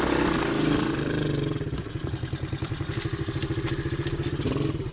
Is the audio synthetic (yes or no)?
no